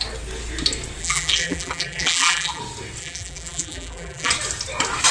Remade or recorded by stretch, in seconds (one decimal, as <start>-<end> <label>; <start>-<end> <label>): 0.0-1.0 recorded; 1.0-2.6 remade; 2.6-3.0 recorded; 3.0-4.3 remade; 4.3-5.1 recorded